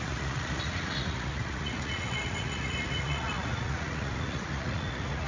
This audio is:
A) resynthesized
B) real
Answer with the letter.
A